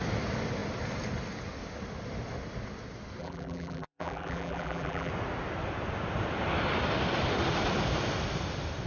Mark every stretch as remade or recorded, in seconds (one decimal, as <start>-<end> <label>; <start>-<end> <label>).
0.0-3.2 recorded; 3.2-5.1 remade; 5.1-8.9 recorded